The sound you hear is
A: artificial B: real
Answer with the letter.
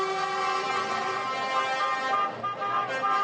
B